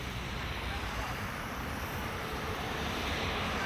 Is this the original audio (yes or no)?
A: no